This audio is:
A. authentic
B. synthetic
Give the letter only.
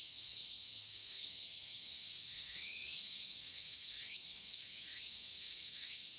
B